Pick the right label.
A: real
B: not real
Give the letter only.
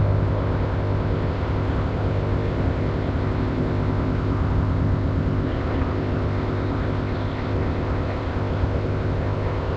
B